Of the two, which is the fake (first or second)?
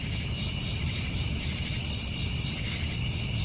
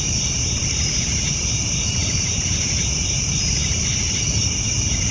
second